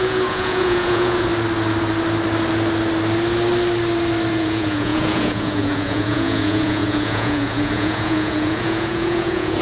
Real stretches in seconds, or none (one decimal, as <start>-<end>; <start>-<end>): 1.3-4.3